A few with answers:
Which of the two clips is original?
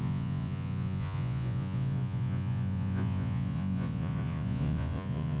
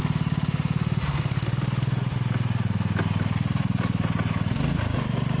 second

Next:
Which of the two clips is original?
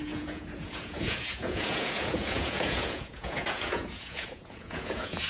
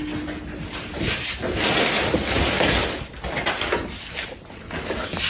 second